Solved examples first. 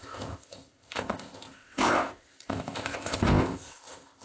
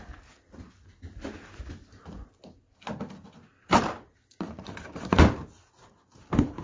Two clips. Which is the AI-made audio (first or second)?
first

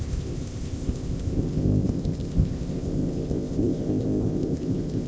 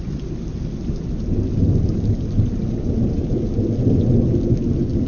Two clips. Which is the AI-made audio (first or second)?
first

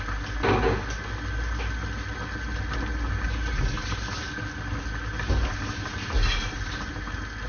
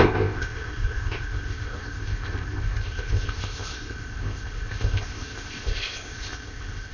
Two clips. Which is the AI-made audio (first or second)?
second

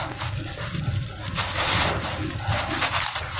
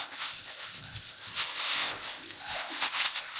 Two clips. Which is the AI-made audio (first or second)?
second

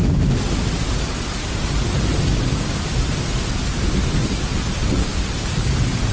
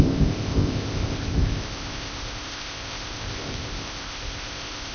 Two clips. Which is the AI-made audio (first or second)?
second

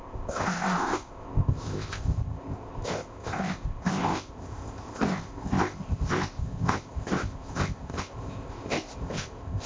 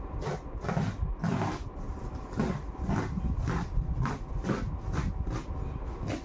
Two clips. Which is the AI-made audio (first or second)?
first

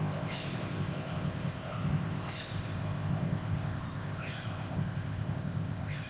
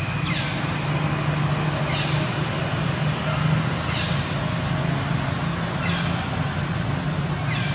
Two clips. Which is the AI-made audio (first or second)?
first